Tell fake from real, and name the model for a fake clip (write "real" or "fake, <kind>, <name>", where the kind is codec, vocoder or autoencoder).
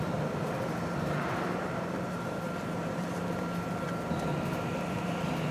fake, vocoder, BigVGAN v2